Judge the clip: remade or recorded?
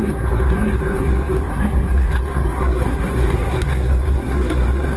remade